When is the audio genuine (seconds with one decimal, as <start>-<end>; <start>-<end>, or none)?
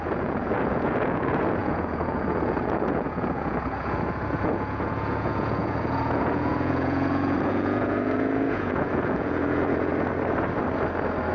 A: 9.9-11.3